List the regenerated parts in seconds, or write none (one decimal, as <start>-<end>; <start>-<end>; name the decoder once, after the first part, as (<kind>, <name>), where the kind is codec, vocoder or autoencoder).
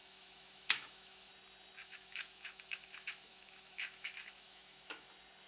0.0-1.3 (autoencoder, DAC-VAE); 1.8-5.1